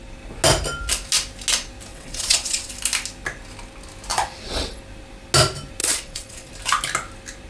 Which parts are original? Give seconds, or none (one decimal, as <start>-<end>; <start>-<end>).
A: 0.0-1.9; 2.7-4.1; 4.8-5.8; 6.5-7.5